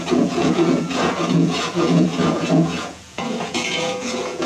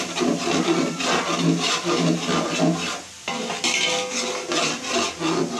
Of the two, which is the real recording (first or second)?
second